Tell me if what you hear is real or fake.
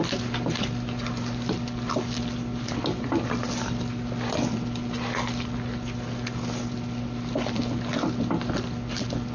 real